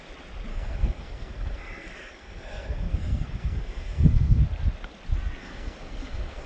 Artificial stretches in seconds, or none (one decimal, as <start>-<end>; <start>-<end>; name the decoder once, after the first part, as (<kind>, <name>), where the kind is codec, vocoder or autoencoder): 0.5-4.4 (codec, SNAC); 5.4-6.5